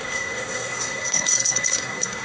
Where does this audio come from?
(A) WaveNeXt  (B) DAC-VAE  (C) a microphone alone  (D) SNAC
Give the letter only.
D